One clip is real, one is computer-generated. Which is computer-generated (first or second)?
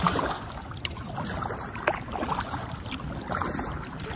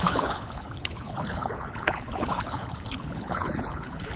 second